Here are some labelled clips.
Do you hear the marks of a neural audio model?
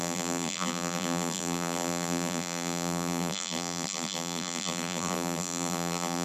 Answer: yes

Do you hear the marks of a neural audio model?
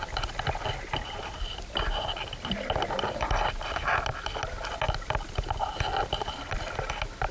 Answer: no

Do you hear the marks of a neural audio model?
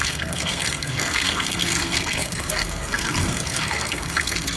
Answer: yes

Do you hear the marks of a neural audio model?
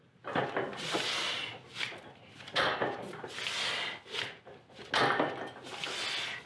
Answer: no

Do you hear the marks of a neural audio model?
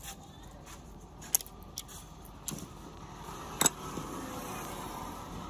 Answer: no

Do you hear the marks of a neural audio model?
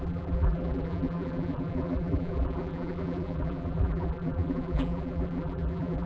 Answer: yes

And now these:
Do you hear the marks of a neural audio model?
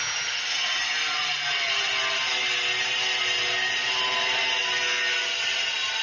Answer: no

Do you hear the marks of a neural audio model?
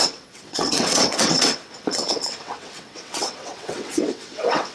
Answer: yes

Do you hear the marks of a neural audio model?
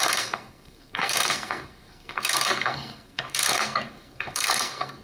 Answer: yes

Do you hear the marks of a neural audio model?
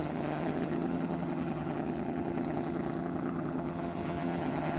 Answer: yes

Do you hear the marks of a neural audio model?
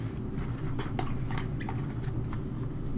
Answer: no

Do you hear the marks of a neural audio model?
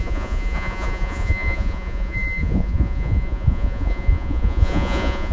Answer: yes